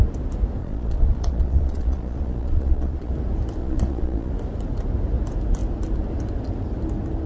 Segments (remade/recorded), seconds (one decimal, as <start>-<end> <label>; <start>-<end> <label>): 0.0-0.6 recorded; 0.6-3.1 remade; 3.1-3.6 recorded; 3.6-4.3 remade; 4.3-7.3 recorded